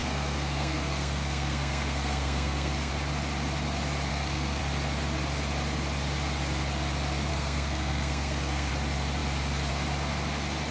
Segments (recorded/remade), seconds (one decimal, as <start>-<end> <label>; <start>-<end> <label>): 0.0-2.9 remade; 2.9-4.1 recorded; 4.1-4.6 remade; 4.6-7.3 recorded; 7.3-8.7 remade; 8.7-10.7 recorded